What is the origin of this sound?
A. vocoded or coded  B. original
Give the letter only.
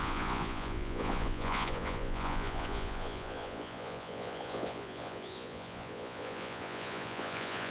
A